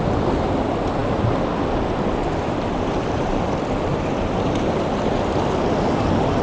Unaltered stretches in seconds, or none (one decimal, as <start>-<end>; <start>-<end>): 0.0-6.4